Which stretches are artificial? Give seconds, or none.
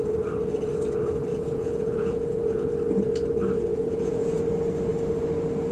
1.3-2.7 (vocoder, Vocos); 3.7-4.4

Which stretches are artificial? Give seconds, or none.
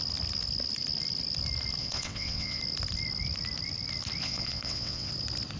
1.8-2.6 (vocoder, WaveNeXt); 4.2-5.1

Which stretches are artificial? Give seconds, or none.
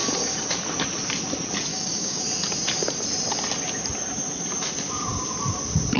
1.7-2.2 (codec, DAC)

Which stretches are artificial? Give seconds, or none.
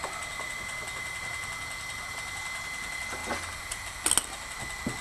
none